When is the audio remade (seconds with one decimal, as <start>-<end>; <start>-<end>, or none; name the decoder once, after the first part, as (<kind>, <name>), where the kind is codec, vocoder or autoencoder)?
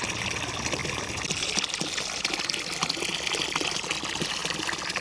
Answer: none